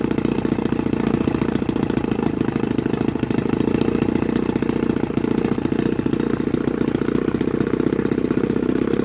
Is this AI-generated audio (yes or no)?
no